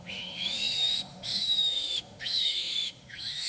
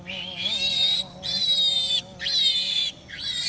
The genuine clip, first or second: second